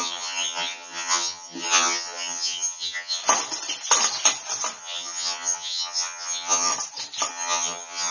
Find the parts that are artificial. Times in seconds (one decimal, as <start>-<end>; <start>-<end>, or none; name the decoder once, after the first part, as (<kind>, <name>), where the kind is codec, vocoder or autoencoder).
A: 0.0-3.2 (vocoder, HiFi-GAN); 4.8-6.7; 7.3-8.1